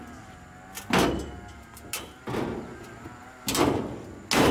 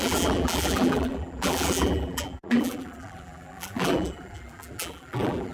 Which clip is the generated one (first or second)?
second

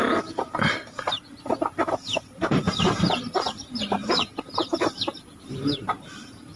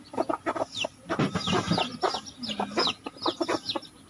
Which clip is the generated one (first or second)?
first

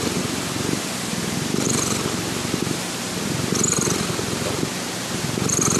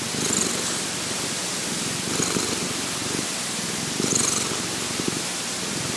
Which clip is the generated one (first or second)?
first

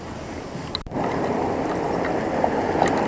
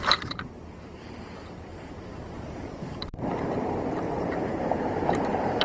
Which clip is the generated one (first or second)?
second